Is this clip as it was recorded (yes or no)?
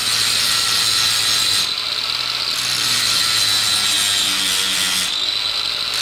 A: yes